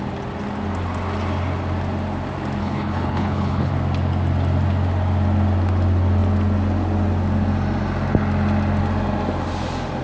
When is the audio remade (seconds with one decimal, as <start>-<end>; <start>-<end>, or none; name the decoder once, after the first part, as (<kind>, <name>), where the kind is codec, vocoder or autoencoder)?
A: 2.6-3.7 (codec, HILCodec)